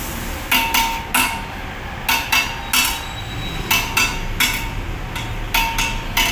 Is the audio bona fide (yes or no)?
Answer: yes